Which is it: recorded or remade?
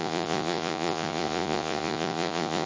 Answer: remade